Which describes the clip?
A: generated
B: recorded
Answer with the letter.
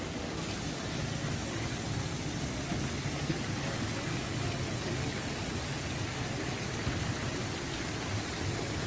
B